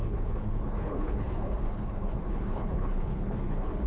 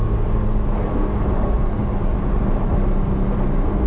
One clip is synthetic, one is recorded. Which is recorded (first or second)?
second